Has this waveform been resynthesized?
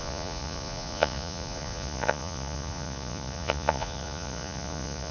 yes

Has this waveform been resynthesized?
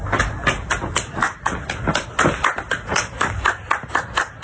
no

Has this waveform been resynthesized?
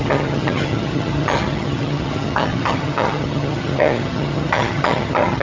yes